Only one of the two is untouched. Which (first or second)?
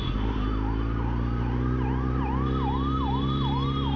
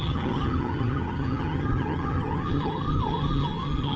first